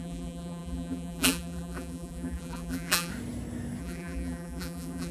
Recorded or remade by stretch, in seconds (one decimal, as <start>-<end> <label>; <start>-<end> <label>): 0.0-3.1 remade; 3.1-3.8 recorded; 3.8-5.1 remade